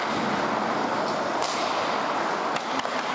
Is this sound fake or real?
real